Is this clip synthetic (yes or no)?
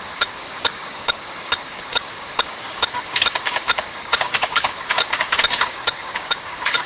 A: yes